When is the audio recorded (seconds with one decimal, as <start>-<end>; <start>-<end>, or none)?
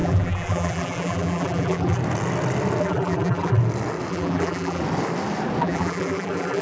2.0-2.8; 3.6-4.1; 4.8-5.6